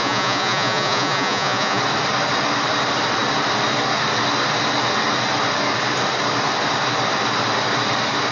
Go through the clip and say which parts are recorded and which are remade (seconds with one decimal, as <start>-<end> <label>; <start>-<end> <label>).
0.0-1.8 remade; 1.8-8.3 recorded